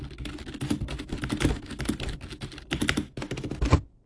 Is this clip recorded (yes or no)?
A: yes